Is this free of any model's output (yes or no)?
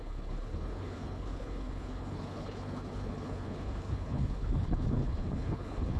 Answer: no